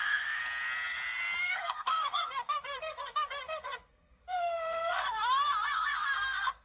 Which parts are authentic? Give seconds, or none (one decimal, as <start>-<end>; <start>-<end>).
0.4-1.4